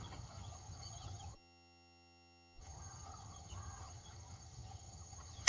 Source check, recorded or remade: remade